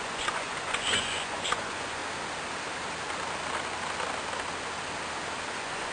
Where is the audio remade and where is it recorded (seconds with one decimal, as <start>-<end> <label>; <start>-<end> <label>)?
0.0-2.0 remade; 2.0-5.5 recorded; 5.5-5.9 remade

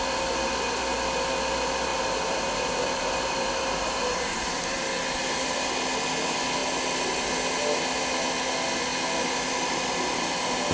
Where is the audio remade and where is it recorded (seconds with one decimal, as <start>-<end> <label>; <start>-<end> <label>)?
0.0-1.9 recorded; 1.9-4.8 remade; 4.8-10.7 recorded